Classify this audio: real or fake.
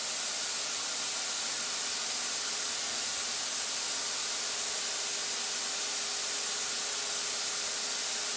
real